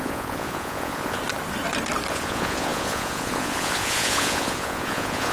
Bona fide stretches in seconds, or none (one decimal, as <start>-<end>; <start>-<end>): 1.2-2.1